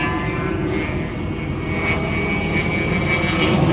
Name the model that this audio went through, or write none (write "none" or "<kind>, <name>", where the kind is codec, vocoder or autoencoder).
none